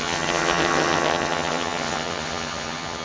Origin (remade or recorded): remade